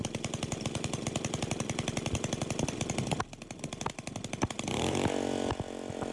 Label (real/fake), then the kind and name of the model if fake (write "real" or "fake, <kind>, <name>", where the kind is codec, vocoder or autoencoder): real